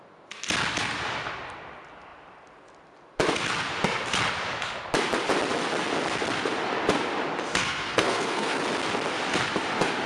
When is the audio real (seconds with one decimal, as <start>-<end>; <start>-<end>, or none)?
0.0-7.4; 8.6-10.1